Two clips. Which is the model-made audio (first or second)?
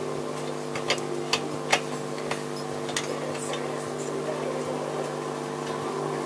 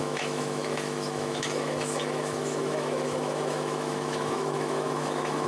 second